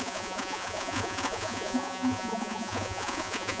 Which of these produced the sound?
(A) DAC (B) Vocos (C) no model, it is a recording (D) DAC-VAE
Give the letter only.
B